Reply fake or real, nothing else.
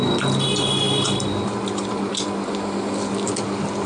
real